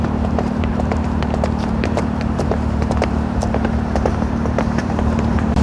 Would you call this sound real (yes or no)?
no